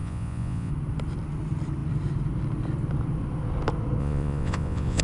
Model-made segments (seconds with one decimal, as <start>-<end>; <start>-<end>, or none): 0.0-0.7; 4.0-5.0